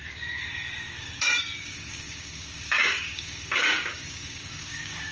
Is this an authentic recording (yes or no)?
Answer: no